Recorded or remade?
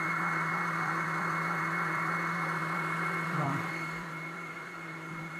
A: remade